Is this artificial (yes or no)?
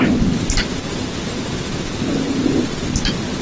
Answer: no